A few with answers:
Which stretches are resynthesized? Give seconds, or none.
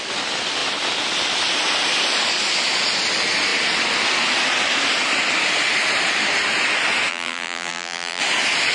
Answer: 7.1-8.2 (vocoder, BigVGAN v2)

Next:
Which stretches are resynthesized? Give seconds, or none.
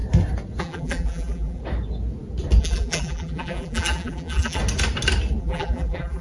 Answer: 0.6-1.6 (vocoder, BigVGAN v2); 2.6-4.6; 5.4-6.2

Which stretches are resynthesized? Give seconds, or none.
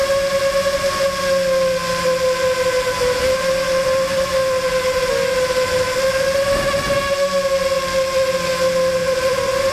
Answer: 9.0-9.7 (vocoder, BigVGAN v2)